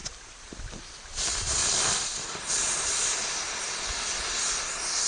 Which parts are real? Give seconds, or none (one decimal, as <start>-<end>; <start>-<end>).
0.7-1.6; 3.0-5.1